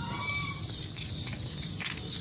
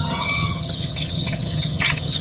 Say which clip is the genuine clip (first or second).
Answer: first